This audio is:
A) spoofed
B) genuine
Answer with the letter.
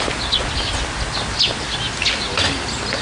B